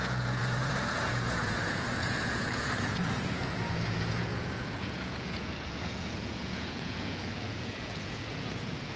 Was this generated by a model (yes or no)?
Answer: yes